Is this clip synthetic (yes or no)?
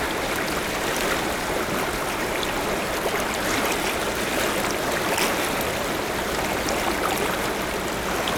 no